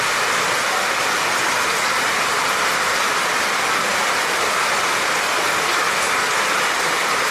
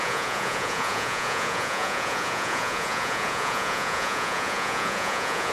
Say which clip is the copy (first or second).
second